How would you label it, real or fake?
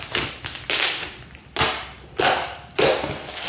real